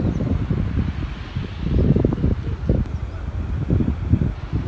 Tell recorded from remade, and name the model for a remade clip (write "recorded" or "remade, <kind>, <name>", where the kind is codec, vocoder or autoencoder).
recorded